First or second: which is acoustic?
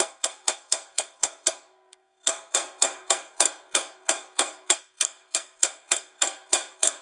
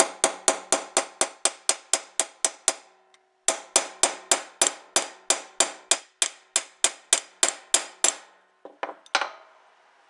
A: second